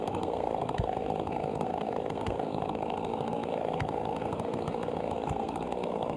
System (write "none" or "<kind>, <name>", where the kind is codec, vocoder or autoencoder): codec, SNAC